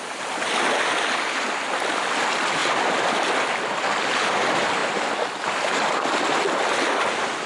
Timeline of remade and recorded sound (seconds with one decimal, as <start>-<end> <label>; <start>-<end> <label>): 0.0-7.5 recorded